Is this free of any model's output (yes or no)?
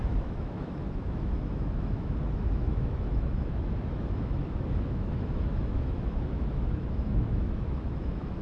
no